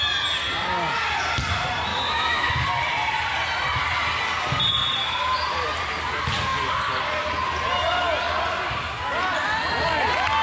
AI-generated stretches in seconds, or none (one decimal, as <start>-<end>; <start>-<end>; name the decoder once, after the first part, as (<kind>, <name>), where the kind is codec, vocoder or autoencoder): 1.9-2.5 (autoencoder, DAC-VAE)